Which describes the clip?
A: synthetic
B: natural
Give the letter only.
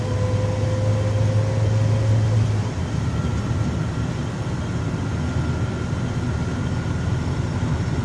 B